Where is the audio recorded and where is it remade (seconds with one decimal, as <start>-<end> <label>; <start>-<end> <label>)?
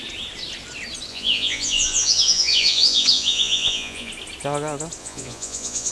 0.0-1.1 recorded; 1.1-4.1 remade; 4.1-5.0 recorded; 5.0-5.9 remade